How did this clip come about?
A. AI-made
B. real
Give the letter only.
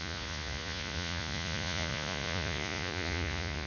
A